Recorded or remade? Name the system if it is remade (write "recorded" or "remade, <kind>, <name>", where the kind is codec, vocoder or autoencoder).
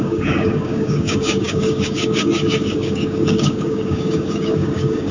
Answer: remade, codec, DAC